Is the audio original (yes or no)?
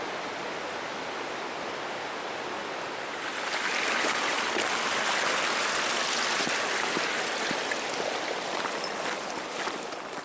yes